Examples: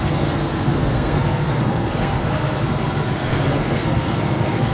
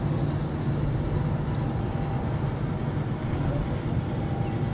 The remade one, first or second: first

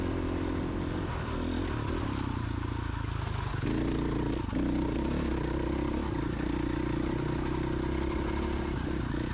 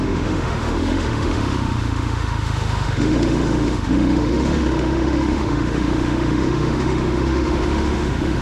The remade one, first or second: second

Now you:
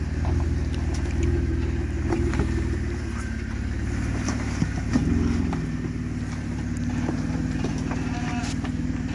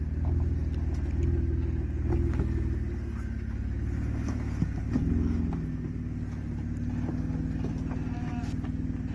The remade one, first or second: first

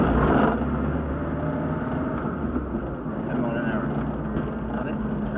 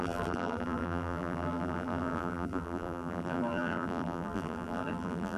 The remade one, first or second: second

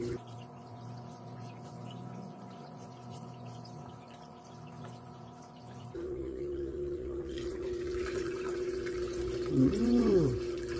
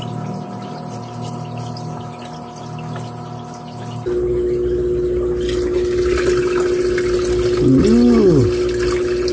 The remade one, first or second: first